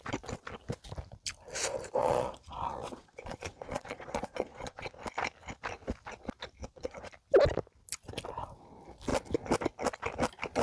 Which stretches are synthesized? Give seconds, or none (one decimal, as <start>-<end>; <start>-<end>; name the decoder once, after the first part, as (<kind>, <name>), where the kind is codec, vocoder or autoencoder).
2.0-5.0 (vocoder, Vocos); 6.6-7.1